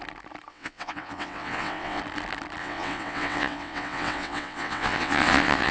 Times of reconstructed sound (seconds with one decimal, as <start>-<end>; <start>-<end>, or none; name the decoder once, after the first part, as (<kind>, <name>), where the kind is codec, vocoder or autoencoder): 0.5-2.0 (vocoder, WaveNeXt); 2.6-5.7